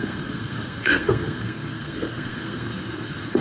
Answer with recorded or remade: remade